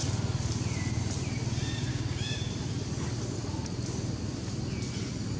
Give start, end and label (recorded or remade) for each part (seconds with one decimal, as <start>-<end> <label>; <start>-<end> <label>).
0.0-1.9 recorded; 1.9-2.5 remade; 2.5-5.4 recorded